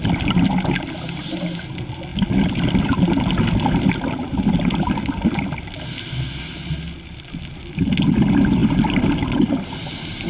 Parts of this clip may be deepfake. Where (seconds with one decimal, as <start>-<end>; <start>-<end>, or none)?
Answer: none